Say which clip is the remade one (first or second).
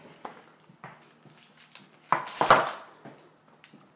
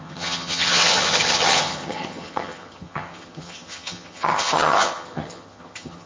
second